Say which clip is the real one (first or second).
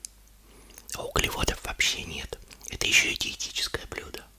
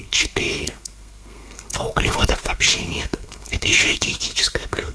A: first